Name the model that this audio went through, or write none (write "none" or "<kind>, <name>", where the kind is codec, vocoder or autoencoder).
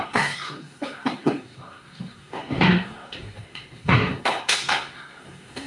codec, SNAC